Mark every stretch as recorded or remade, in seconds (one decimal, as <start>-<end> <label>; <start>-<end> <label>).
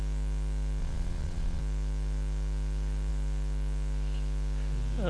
0.0-0.8 recorded; 0.8-1.6 remade; 1.6-5.1 recorded